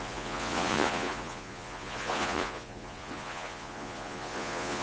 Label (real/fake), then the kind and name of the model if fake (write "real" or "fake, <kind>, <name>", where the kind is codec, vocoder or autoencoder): fake, vocoder, Vocos